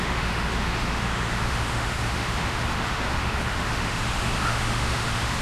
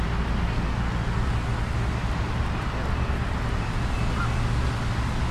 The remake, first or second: first